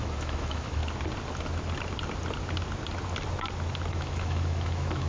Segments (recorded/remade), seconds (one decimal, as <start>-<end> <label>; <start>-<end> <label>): 0.0-0.8 remade; 0.8-3.9 recorded; 3.9-5.1 remade